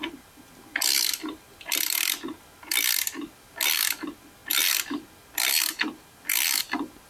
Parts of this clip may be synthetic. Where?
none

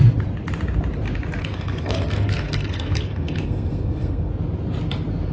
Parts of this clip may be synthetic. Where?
1.4-4.3 (codec, SNAC)

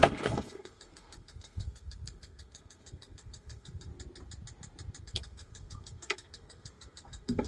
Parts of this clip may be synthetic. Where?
0.0-3.9 (codec, SNAC); 5.0-7.5